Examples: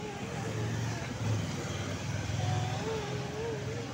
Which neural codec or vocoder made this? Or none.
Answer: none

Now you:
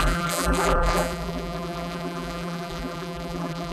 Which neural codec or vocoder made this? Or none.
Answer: vocoder, BigVGAN v2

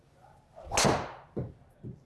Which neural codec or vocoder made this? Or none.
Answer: none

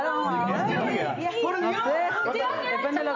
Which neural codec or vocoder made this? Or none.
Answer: none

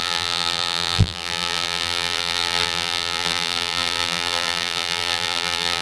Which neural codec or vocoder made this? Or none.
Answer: vocoder, BigVGAN v2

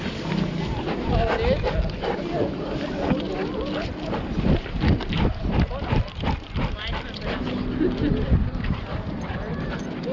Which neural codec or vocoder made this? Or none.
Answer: none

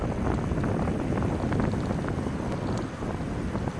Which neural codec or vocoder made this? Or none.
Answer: none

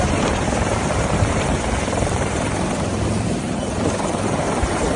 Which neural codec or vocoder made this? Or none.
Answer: vocoder, BigVGAN v2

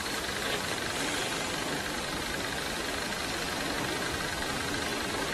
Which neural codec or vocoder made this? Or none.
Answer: none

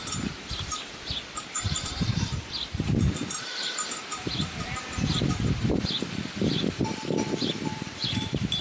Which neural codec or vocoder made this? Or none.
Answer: vocoder, BigVGAN v2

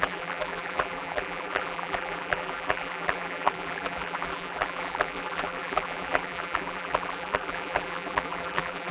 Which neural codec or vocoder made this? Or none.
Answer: vocoder, BigVGAN v2